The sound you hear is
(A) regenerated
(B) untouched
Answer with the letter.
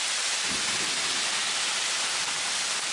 B